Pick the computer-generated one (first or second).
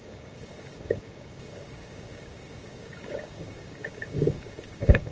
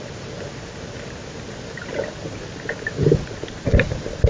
first